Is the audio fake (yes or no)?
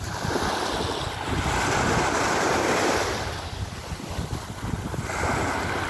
no